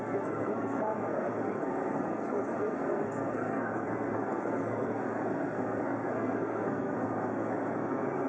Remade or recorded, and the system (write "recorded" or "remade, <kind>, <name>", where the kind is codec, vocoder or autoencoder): remade, codec, SNAC